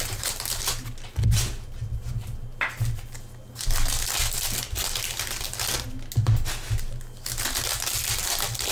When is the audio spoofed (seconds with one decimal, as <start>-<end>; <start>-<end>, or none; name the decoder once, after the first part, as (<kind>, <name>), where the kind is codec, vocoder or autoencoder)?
none